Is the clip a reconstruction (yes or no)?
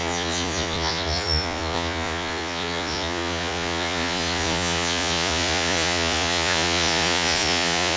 yes